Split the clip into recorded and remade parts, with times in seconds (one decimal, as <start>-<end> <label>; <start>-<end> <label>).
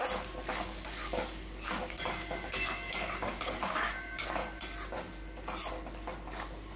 0.0-0.5 recorded; 0.5-4.6 remade; 4.6-6.8 recorded